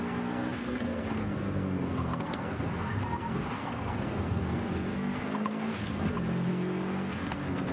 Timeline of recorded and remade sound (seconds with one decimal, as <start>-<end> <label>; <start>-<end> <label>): 0.0-5.9 remade; 5.9-6.5 recorded; 6.5-7.7 remade